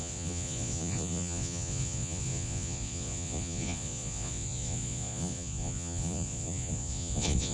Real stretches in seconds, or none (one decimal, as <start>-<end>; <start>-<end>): none